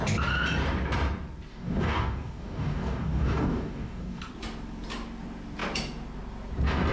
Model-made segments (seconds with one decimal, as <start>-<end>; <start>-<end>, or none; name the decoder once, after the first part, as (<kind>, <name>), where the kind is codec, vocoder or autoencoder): 1.5-4.2 (codec, DAC)